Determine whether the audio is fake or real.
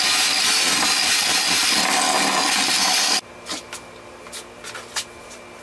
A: real